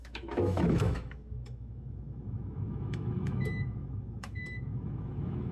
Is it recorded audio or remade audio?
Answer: remade